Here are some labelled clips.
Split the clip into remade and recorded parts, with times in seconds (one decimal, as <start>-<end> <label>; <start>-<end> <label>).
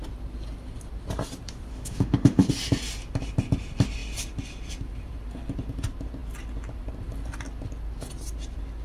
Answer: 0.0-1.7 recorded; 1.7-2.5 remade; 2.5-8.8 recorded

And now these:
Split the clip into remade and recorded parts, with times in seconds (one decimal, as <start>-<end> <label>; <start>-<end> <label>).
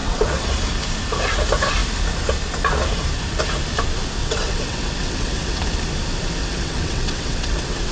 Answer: 0.0-0.5 remade; 0.5-4.2 recorded; 4.2-5.6 remade; 5.6-6.4 recorded; 6.4-7.9 remade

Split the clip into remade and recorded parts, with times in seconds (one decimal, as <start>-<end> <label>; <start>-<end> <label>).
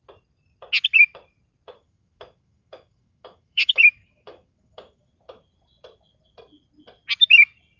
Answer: 0.0-1.8 recorded; 1.8-5.1 remade; 5.1-7.8 recorded